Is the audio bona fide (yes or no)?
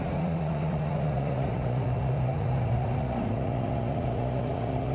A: no